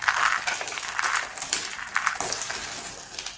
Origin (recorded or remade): recorded